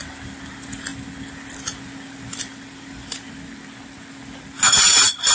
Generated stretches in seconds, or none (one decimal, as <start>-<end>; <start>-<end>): none